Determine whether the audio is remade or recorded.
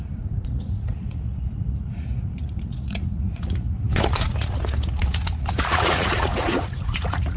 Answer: remade